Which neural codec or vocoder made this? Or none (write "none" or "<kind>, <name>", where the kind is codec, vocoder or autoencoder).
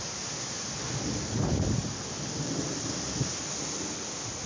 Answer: none